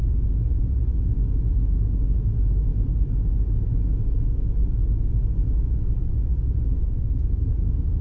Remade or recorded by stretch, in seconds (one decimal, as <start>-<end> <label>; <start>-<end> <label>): 0.0-8.0 recorded